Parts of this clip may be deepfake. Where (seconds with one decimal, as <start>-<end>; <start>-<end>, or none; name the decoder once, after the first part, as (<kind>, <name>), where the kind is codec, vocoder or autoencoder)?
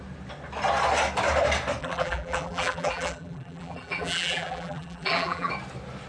1.8-5.5 (vocoder, BigVGAN v2)